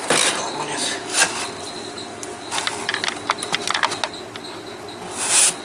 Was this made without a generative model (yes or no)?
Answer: yes